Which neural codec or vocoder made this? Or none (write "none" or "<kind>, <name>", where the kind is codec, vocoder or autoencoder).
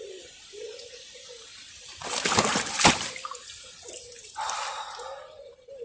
none